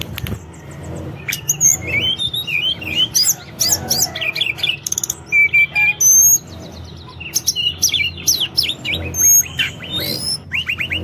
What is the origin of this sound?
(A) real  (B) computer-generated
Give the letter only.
A